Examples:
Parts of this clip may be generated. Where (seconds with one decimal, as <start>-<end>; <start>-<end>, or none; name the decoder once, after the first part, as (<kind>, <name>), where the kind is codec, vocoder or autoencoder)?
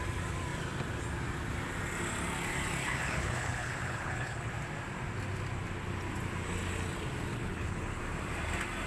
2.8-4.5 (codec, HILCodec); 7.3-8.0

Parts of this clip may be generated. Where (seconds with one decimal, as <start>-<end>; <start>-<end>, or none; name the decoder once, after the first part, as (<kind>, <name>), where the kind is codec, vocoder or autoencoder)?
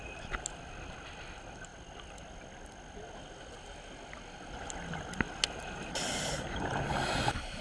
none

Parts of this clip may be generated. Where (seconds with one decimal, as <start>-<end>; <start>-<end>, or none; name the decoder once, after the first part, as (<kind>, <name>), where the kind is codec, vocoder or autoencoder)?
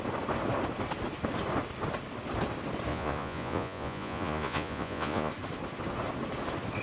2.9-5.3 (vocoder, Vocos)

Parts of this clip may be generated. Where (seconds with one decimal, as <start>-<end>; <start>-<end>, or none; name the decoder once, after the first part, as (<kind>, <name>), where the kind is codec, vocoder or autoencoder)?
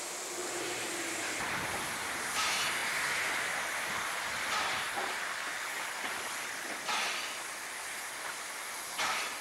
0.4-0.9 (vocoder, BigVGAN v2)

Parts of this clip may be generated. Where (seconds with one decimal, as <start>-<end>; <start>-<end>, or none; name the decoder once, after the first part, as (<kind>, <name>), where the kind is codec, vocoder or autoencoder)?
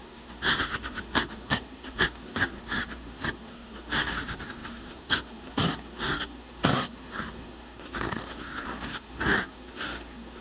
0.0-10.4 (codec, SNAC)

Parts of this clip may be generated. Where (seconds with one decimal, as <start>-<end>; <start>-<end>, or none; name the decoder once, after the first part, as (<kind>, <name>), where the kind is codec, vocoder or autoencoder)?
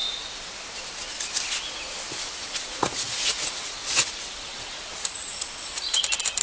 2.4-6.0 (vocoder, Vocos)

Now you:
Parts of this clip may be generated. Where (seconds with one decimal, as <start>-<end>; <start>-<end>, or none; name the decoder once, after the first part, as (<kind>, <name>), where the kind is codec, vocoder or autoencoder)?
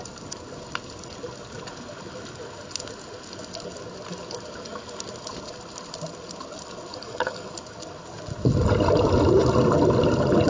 6.9-7.5 (codec, DAC)